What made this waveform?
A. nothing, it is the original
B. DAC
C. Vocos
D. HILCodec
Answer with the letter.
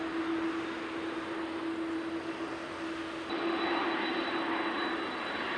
A